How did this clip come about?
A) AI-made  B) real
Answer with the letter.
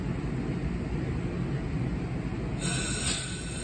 B